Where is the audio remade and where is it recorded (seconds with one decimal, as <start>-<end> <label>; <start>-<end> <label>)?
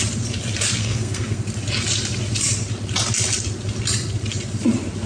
0.0-0.8 recorded; 0.8-1.4 remade; 1.4-5.1 recorded